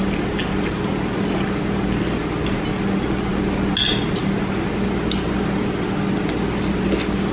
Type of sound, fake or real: real